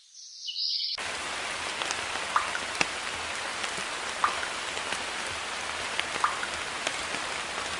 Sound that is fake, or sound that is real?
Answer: real